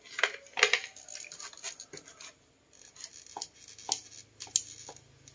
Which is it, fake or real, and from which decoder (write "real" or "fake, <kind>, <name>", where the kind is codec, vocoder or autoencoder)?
real